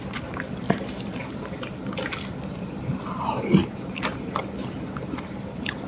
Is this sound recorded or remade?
recorded